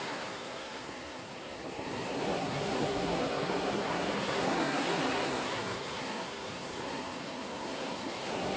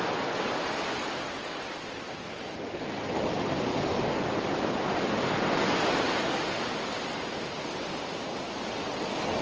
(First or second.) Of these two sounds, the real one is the second